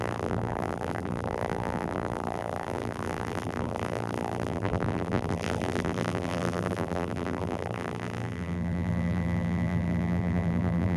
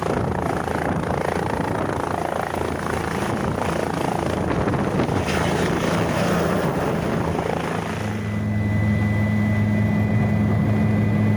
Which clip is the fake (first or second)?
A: first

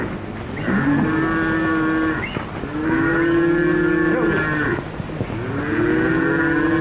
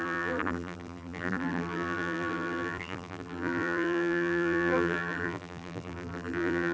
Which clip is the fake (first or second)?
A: second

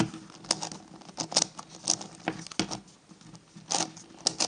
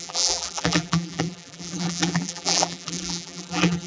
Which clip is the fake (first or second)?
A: second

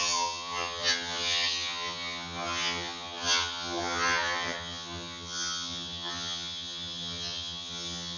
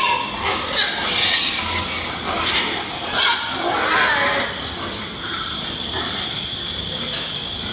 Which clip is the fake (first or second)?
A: first